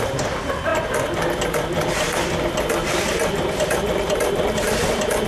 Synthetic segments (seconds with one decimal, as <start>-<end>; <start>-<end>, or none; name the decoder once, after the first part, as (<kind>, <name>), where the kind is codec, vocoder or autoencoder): 0.0-0.7 (vocoder, BigVGAN v2); 2.9-5.3